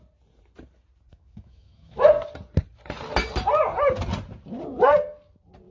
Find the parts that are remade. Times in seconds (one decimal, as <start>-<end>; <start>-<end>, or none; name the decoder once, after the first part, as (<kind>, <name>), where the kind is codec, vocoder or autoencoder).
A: 1.1-2.1 (autoencoder, DAC-VAE)